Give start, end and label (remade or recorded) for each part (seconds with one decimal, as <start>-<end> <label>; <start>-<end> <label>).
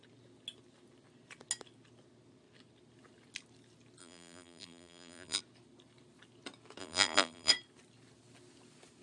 0.0-4.0 recorded; 4.0-5.4 remade; 5.4-6.8 recorded; 6.8-7.5 remade; 7.5-9.0 recorded